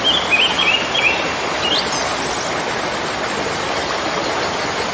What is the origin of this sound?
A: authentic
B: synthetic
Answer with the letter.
A